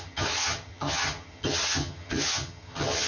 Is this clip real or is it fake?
fake